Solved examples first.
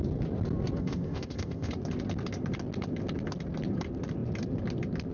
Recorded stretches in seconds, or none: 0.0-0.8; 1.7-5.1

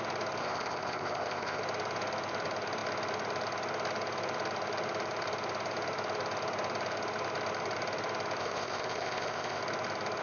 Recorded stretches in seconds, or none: 0.0-0.4; 1.6-8.4; 9.6-10.2

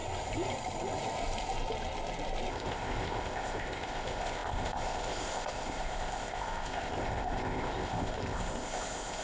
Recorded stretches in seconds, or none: 0.0-2.5

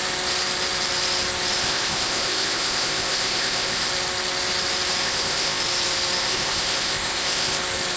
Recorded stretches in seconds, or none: 0.0-1.6; 3.9-5.0; 5.6-6.2; 7.6-8.0

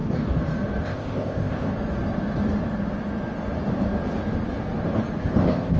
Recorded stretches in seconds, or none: 0.0-0.8; 1.7-5.2

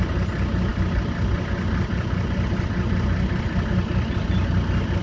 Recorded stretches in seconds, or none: 0.0-5.0